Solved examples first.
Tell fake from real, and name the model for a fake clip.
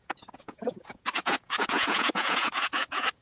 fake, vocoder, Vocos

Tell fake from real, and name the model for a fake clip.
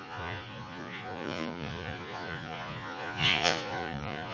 fake, vocoder, Vocos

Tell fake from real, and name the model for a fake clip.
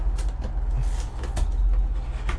real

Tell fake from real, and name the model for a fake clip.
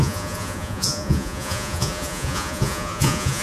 fake, vocoder, Vocos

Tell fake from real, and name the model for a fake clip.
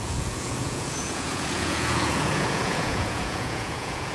fake, vocoder, Vocos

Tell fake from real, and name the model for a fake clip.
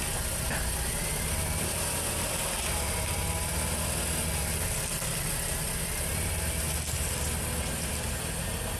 real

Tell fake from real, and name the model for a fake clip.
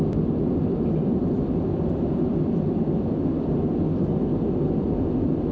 real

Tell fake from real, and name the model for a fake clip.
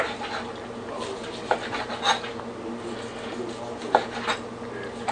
real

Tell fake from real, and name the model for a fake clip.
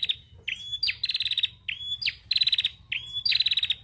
real